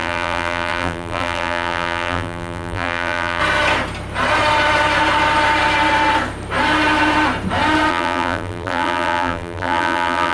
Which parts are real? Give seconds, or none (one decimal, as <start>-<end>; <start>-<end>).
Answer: 3.4-7.9